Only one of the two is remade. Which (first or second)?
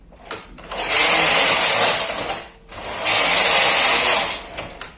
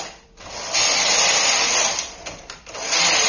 second